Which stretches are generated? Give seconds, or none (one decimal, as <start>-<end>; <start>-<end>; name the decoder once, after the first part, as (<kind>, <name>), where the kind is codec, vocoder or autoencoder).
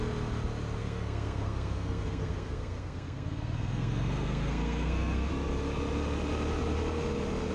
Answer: 0.8-5.3 (codec, SNAC)